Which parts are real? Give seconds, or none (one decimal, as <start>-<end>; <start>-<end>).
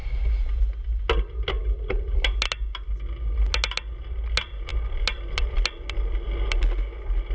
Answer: 0.0-7.3